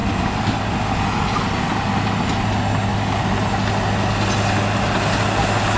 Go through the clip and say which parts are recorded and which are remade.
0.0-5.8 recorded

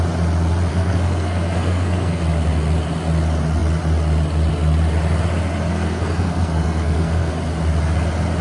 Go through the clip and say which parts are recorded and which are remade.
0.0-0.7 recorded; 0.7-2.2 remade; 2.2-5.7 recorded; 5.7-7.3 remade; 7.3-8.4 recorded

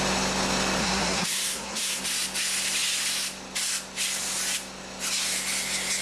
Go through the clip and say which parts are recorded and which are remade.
0.0-0.8 recorded; 0.8-2.0 remade; 2.0-6.0 recorded

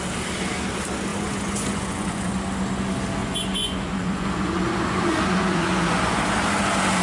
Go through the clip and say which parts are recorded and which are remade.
0.0-1.1 recorded; 1.1-2.3 remade; 2.3-3.2 recorded; 3.2-6.2 remade; 6.2-7.0 recorded